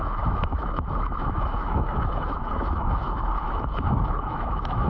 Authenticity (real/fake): fake